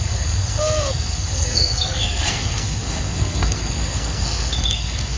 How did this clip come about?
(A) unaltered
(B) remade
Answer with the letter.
B